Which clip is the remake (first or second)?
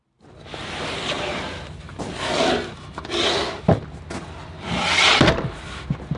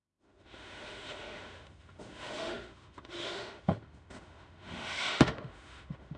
second